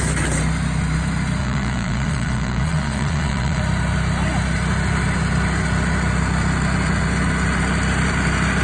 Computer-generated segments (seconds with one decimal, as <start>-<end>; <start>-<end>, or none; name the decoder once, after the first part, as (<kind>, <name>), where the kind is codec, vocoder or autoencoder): 1.4-3.6 (vocoder, Vocos)